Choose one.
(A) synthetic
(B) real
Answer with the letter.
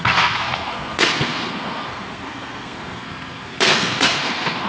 A